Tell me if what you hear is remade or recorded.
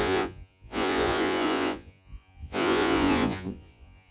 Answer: remade